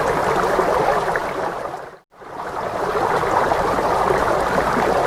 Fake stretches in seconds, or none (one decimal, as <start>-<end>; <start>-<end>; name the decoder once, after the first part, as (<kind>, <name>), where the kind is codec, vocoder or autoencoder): none